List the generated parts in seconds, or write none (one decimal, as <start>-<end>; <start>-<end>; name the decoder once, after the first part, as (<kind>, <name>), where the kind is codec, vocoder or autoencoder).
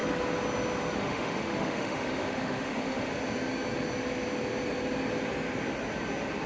1.0-3.1 (autoencoder, DAC-VAE)